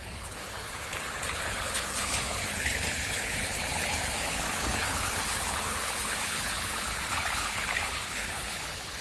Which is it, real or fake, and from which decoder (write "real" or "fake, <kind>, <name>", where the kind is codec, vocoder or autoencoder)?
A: fake, codec, HILCodec